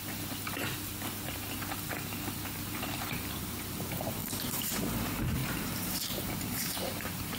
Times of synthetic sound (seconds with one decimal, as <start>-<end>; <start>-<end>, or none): 4.2-4.7; 5.4-7.4